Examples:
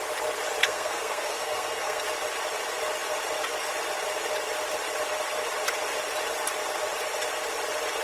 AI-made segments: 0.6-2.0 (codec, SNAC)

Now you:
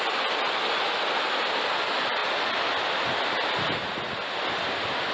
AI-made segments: none

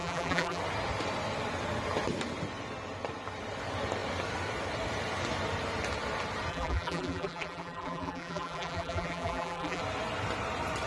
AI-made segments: 0.0-0.6 (vocoder, BigVGAN v2); 6.5-9.8